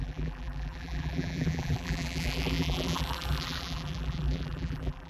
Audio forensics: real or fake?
fake